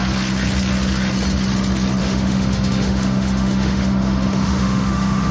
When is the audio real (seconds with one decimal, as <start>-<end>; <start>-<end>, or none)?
0.0-2.0

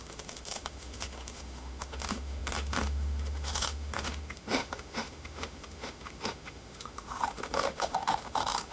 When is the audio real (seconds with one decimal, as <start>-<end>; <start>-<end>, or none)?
none

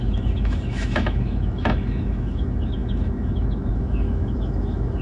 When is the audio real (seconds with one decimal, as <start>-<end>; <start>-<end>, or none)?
none

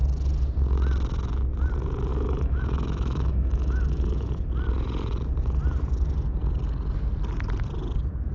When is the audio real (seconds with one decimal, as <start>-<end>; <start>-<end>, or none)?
0.0-2.1; 4.3-8.3

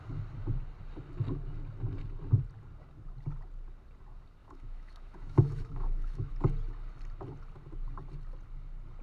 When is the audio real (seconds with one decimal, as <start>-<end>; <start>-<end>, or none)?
0.0-4.4; 6.3-9.0